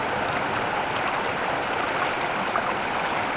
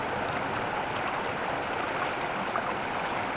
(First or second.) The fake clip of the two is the first